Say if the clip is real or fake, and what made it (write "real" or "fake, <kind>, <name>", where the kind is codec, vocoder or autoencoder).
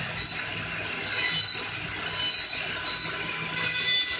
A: real